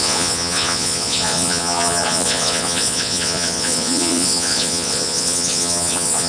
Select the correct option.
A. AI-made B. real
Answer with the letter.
A